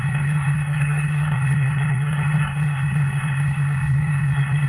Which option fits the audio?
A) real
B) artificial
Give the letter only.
B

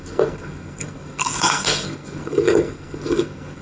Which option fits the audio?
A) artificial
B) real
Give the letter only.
A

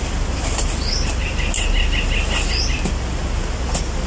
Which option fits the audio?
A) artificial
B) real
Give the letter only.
B